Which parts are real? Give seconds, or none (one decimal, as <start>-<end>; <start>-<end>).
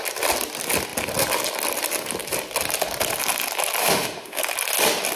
0.0-3.8; 4.4-5.2